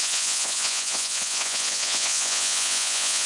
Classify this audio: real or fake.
fake